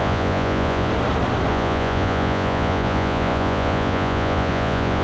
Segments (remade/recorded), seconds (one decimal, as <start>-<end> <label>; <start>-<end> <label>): 0.0-0.9 remade; 0.9-1.5 recorded; 1.5-5.0 remade